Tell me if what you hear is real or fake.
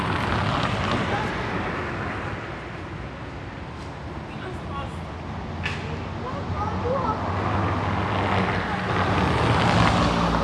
real